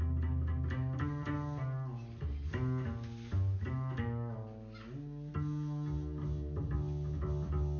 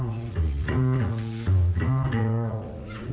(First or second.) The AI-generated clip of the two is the second